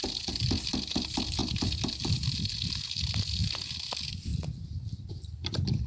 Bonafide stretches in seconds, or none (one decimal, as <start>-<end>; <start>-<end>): 0.0-5.9